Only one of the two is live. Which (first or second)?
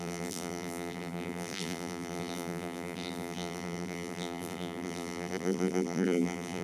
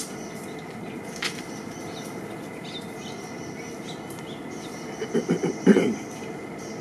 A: second